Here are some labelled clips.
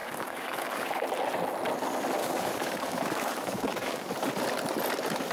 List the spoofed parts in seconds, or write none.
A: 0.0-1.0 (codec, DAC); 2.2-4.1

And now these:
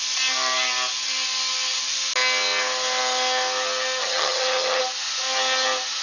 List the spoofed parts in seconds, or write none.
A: 4.0-4.8 (vocoder, HiFi-GAN)